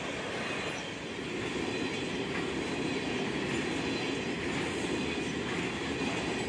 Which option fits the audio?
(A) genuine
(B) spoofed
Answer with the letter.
A